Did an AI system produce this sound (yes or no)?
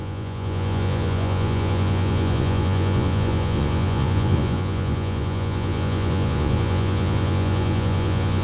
yes